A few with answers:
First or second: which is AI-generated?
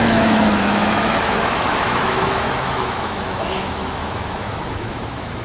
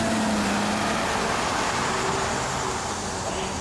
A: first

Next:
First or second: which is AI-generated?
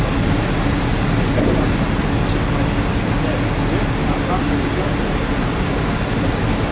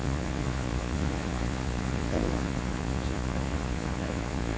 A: second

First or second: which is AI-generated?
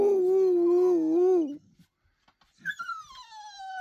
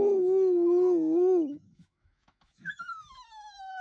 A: second